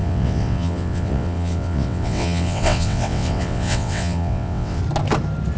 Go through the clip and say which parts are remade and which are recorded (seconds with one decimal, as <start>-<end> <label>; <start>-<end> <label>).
0.0-4.8 remade; 4.8-5.6 recorded